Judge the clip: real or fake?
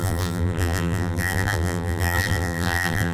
fake